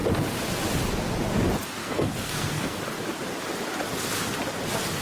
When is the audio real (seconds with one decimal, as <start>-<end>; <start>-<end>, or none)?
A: 0.0-1.8; 2.8-5.0